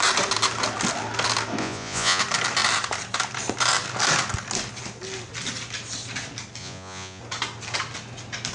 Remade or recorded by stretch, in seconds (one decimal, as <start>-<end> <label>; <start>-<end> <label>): 0.0-1.6 recorded; 1.6-2.2 remade; 2.2-6.6 recorded; 6.6-7.2 remade; 7.2-8.5 recorded